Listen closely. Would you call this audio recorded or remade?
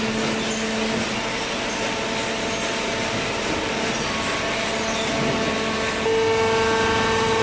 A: recorded